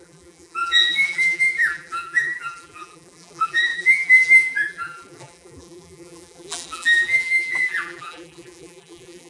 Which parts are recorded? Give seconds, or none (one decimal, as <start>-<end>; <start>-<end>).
none